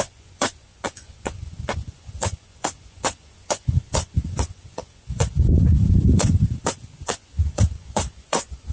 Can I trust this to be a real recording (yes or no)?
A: no